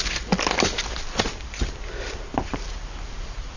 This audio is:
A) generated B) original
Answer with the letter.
B